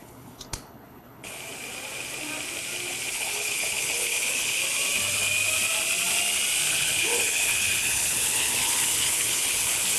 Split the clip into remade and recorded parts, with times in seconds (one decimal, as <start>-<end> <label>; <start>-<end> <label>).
0.0-1.4 remade; 1.4-3.1 recorded; 3.1-4.6 remade; 4.6-6.7 recorded; 6.7-10.0 remade